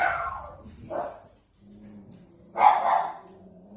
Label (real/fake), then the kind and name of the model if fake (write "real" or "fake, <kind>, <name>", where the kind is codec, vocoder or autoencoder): real